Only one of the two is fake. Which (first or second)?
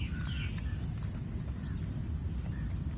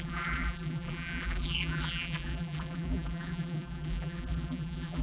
second